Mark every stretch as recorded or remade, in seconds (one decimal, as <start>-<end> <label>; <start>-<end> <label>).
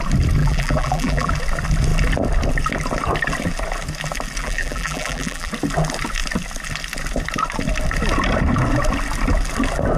0.0-0.4 recorded; 0.4-1.3 remade; 1.3-4.4 recorded; 4.4-5.5 remade; 5.5-10.0 recorded